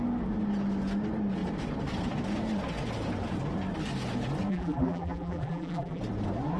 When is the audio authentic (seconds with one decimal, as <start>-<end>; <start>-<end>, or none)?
0.0-4.5; 6.0-6.6